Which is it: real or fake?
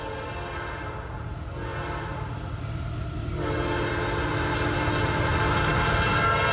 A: real